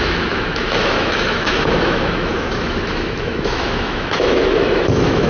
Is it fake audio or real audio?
fake